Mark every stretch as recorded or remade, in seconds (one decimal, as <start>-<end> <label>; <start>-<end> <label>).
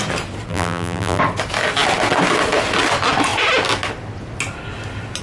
0.0-0.5 recorded; 0.5-1.2 remade; 1.2-5.2 recorded